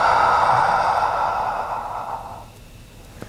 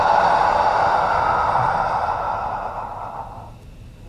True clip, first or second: first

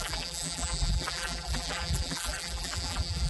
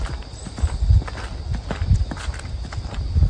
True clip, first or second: second